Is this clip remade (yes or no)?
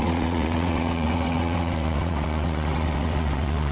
yes